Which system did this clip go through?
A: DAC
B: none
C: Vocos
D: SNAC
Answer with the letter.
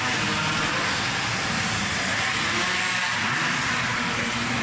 B